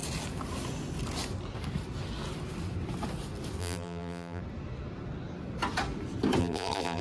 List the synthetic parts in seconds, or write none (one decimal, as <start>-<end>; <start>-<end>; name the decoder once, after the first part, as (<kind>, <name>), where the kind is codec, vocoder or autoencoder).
3.6-4.4 (vocoder, BigVGAN v2); 6.4-7.0